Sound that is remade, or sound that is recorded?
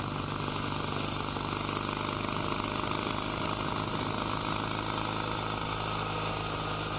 recorded